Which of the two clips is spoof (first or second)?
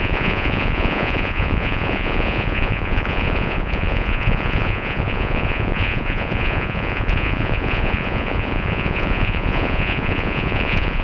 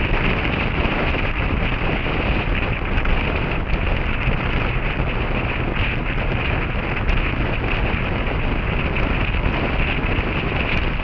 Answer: first